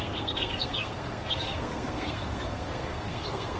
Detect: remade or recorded remade